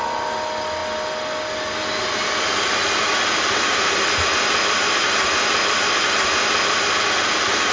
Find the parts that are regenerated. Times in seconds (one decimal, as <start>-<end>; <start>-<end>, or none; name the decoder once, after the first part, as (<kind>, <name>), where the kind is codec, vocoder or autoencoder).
none

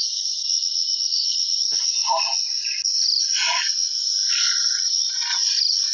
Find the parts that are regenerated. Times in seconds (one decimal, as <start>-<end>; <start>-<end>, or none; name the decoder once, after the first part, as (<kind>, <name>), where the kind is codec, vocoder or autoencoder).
none

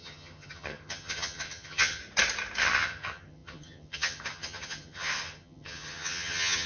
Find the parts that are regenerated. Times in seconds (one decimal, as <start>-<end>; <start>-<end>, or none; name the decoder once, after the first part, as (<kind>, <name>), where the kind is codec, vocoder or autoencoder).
0.0-2.0 (vocoder, HiFi-GAN); 2.6-6.7

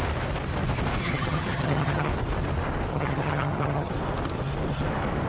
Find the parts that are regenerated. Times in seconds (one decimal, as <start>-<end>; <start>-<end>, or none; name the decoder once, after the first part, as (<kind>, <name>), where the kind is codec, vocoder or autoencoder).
1.0-2.1 (vocoder, HiFi-GAN); 2.9-3.9

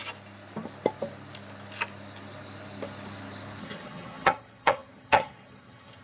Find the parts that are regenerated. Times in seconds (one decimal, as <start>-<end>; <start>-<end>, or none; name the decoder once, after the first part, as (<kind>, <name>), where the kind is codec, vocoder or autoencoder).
3.6-6.0 (vocoder, HiFi-GAN)